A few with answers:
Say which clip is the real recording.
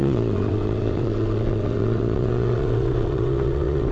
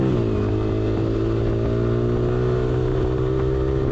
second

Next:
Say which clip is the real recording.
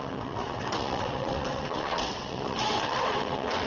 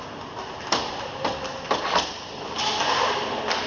second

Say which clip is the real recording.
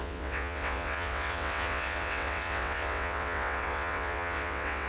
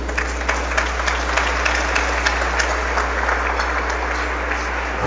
second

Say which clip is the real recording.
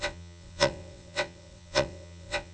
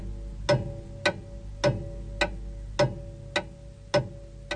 second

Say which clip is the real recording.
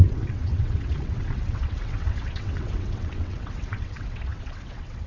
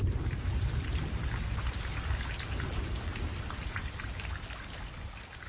second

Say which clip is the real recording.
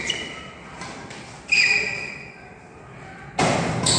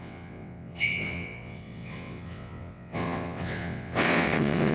first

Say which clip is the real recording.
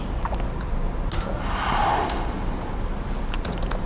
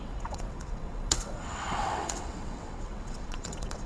first